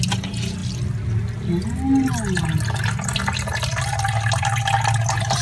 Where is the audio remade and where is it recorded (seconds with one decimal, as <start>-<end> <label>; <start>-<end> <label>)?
0.0-5.4 recorded